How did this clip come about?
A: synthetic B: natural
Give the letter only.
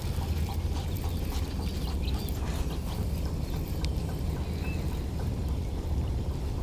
A